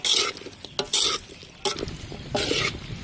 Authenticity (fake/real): real